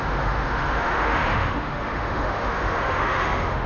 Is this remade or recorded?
remade